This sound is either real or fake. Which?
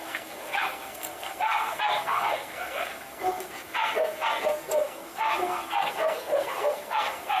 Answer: fake